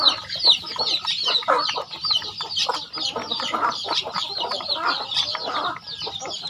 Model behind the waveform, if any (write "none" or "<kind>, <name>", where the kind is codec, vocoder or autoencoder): vocoder, BigVGAN v2